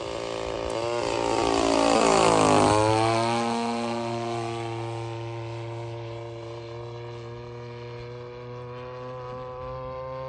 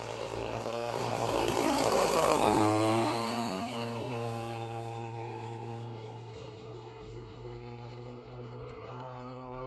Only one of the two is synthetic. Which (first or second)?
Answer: second